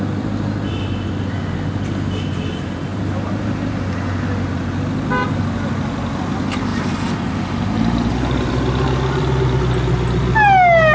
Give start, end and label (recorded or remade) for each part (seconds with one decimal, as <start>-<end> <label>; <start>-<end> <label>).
0.0-2.9 recorded; 2.9-3.7 remade; 3.7-6.7 recorded; 6.7-9.6 remade; 9.6-10.9 recorded